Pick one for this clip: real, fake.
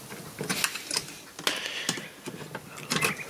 real